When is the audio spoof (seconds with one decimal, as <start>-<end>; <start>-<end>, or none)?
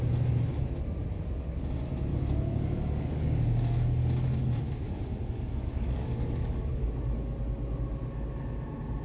1.1-1.6; 2.1-6.9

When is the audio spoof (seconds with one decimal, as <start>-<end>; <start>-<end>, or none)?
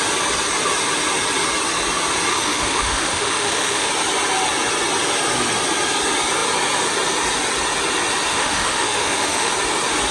2.3-3.9; 8.3-9.5